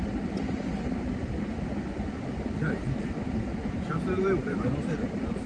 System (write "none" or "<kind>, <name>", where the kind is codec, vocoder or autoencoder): none